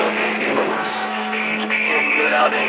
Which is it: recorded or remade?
remade